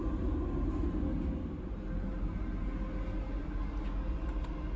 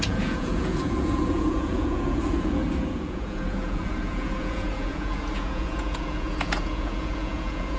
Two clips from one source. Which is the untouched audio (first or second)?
first